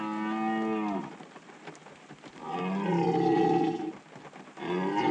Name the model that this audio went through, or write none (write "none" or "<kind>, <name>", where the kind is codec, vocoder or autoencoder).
none